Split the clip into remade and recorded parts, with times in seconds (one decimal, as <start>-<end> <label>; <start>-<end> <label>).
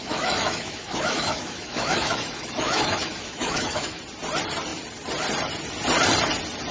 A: 0.0-4.0 remade; 4.0-6.7 recorded